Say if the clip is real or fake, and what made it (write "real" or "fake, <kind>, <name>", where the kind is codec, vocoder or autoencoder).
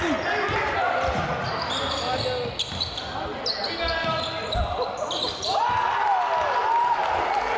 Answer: real